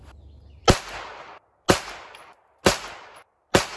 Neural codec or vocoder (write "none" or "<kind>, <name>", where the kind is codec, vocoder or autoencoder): none